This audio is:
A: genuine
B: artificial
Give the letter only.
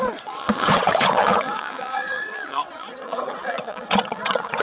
B